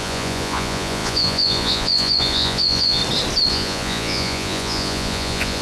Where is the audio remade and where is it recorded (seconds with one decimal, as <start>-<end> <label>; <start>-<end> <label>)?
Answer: 0.0-3.0 remade; 3.0-3.5 recorded; 3.5-5.6 remade